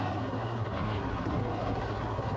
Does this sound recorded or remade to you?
remade